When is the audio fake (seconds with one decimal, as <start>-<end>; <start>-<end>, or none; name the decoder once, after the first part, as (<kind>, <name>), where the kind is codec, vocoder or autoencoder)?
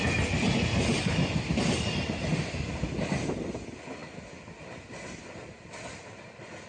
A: none